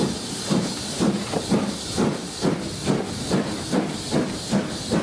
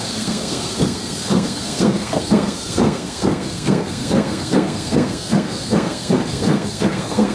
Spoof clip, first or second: second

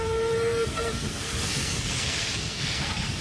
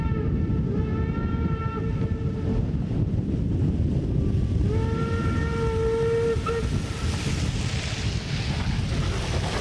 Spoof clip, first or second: first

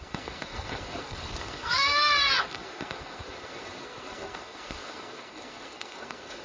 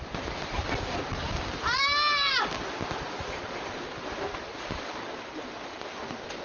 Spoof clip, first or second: first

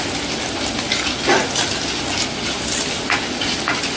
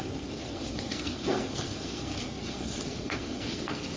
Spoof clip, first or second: second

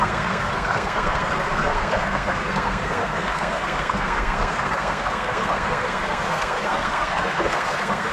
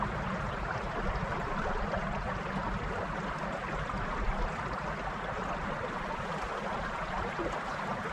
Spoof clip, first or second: first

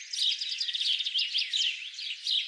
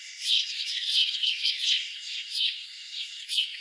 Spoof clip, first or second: second